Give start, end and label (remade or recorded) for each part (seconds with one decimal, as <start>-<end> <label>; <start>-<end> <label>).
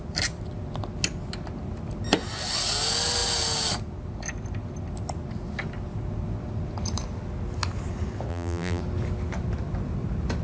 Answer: 0.0-8.3 recorded; 8.3-8.8 remade; 8.8-10.4 recorded